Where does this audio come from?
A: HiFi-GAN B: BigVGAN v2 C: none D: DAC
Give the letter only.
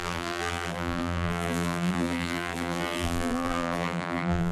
B